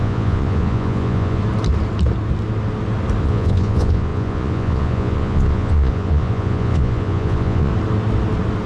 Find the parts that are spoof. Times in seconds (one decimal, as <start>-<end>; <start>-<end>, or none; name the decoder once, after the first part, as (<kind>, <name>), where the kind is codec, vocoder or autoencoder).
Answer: 0.0-1.4 (vocoder, Vocos); 3.2-7.7